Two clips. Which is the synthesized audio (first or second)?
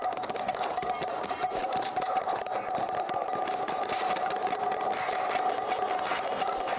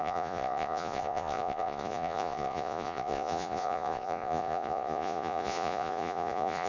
second